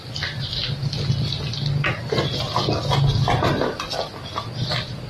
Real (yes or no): yes